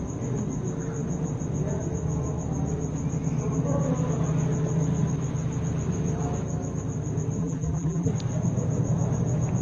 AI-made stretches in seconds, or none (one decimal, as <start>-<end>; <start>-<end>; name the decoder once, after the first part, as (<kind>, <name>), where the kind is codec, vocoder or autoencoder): 7.4-8.1 (vocoder, BigVGAN v2)